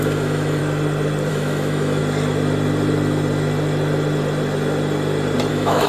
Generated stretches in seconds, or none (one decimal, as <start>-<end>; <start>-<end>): 0.0-0.6; 1.3-2.0; 5.5-5.9